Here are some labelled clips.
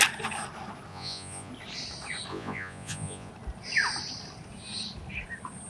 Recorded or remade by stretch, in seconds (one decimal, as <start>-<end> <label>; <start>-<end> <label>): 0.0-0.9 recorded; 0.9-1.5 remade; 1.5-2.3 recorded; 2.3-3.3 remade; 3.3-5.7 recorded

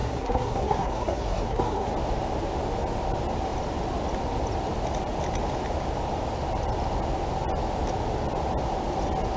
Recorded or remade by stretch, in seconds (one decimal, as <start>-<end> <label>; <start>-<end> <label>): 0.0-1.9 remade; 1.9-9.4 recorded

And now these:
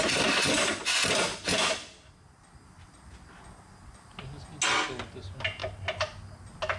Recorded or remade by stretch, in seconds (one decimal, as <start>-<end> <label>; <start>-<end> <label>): 0.0-6.8 recorded